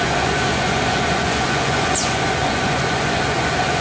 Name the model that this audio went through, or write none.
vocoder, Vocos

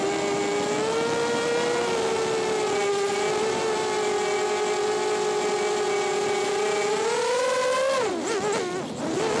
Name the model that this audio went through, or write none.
none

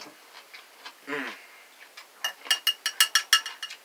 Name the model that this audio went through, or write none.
none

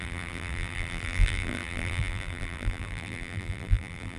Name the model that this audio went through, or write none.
vocoder, BigVGAN v2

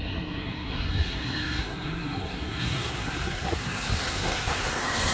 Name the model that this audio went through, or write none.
codec, SNAC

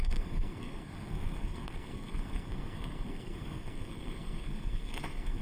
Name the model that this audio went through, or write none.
codec, SNAC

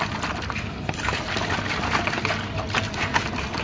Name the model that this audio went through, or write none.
none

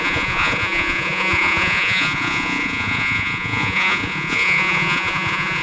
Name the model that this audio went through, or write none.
vocoder, Vocos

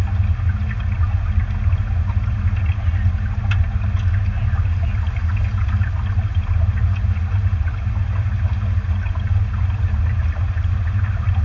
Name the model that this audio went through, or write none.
none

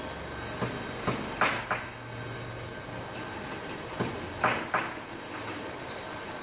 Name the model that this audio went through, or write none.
none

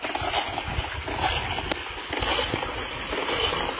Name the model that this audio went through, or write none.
none